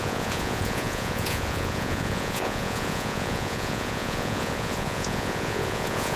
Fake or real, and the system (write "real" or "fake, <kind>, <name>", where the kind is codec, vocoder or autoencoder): fake, vocoder, Vocos